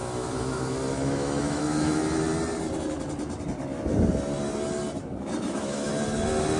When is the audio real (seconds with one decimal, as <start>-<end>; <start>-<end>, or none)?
2.0-5.5; 5.9-6.6